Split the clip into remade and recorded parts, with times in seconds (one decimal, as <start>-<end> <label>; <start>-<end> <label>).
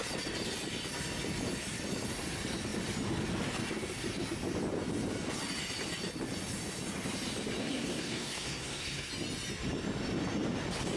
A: 0.0-7.6 recorded; 7.6-9.1 remade; 9.1-11.0 recorded